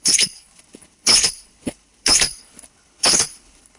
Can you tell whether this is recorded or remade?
remade